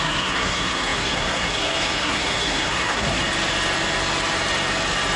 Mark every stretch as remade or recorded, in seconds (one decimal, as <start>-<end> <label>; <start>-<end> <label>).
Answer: 0.0-3.2 remade; 3.2-5.2 recorded